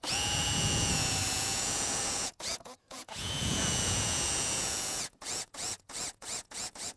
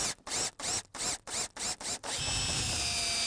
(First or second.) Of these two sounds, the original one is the second